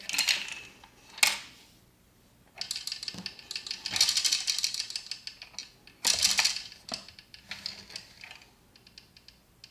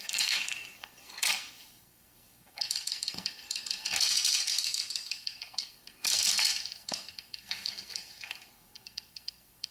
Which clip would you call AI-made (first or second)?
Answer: second